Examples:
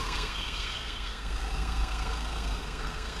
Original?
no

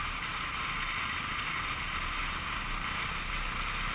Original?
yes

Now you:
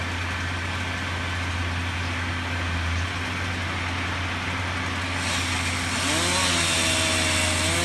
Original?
yes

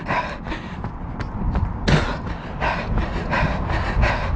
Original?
yes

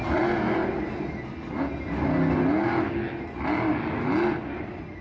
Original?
yes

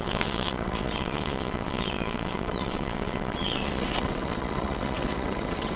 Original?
no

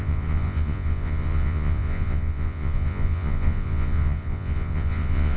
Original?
no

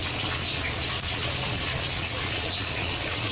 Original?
no